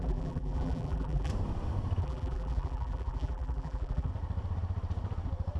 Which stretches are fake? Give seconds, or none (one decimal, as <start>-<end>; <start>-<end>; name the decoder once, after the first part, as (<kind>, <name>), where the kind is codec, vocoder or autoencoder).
0.0-1.3 (vocoder, BigVGAN v2); 2.0-4.1

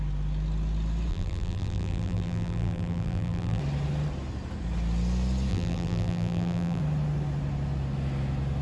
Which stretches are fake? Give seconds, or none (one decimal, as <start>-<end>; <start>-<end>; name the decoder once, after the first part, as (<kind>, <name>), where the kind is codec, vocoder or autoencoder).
1.1-3.6 (vocoder, BigVGAN v2); 5.5-6.8

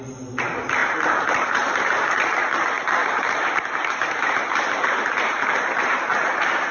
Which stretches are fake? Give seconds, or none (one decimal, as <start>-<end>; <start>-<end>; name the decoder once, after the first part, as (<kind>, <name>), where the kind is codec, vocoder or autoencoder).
0.8-2.2 (vocoder, BigVGAN v2); 3.0-5.6